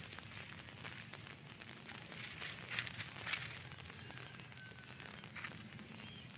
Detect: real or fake real